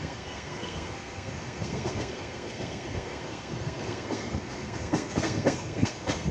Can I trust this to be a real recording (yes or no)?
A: no